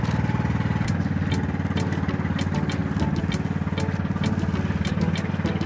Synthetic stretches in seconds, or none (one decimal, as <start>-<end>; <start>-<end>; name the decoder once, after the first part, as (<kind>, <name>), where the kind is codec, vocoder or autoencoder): none